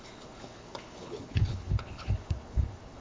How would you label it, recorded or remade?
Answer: remade